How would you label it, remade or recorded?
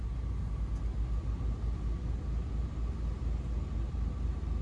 recorded